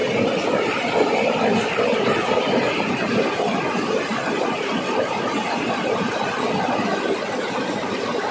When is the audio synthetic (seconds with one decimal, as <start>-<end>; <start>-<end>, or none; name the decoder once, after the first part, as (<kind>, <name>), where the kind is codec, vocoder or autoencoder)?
none